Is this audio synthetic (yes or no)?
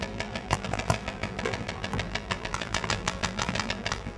yes